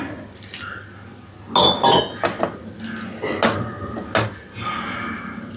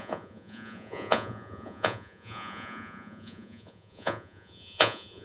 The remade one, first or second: second